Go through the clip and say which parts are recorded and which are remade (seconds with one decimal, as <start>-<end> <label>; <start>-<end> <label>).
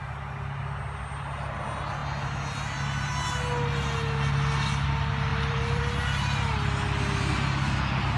0.0-5.3 recorded; 5.3-5.8 remade; 5.8-8.2 recorded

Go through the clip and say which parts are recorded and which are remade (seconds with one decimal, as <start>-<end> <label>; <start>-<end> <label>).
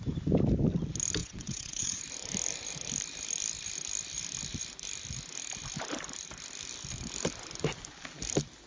0.0-1.2 recorded; 1.2-2.0 remade; 2.0-8.7 recorded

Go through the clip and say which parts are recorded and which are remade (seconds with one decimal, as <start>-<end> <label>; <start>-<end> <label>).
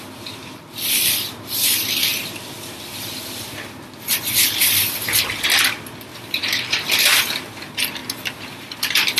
0.0-2.1 remade; 2.1-5.2 recorded; 5.2-8.0 remade; 8.0-8.6 recorded; 8.6-9.2 remade